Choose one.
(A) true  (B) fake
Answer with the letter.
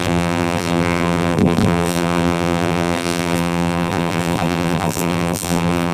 B